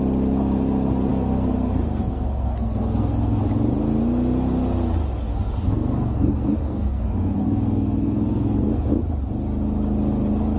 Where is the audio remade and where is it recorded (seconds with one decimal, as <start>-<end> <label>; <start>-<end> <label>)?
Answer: 0.0-1.1 recorded; 1.1-3.4 remade; 3.4-5.3 recorded; 5.3-8.9 remade; 8.9-10.6 recorded